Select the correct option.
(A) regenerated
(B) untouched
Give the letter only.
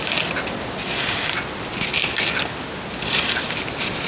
B